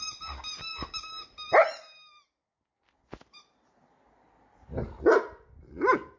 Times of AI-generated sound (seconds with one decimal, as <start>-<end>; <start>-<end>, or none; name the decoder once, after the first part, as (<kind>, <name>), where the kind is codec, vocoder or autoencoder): none